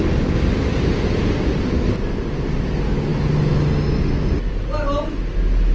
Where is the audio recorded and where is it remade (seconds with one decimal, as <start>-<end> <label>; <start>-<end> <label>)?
0.0-0.7 recorded; 0.7-1.8 remade; 1.8-5.7 recorded